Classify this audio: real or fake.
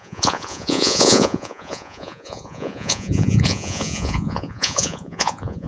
fake